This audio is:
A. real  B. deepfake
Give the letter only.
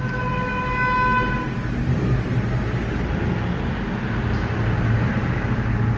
A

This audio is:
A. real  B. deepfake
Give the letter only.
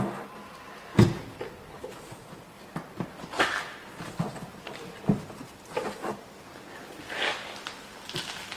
A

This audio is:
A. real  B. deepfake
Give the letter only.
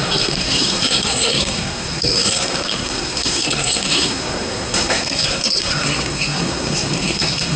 B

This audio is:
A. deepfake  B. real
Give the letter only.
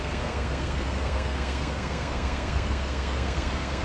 A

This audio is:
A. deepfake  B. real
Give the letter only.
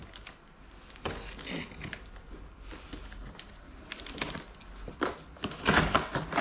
B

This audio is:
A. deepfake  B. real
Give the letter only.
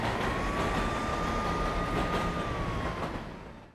B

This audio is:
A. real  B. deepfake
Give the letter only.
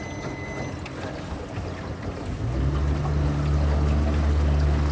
A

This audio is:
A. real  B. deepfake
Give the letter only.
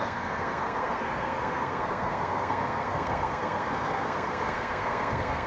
B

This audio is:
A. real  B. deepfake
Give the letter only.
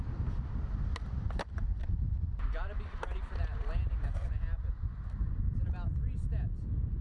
A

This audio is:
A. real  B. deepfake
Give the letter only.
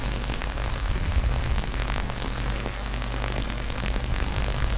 B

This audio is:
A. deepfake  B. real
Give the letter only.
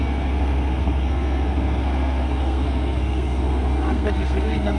A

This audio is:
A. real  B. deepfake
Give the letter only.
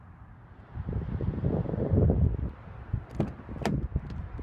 A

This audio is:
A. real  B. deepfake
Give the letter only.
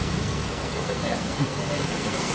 B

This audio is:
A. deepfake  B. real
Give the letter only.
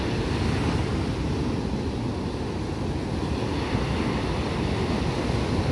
B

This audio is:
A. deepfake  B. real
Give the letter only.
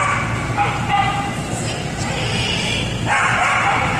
B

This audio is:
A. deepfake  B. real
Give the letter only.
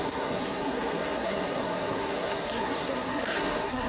A